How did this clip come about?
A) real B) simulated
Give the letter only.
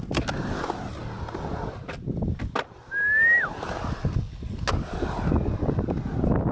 A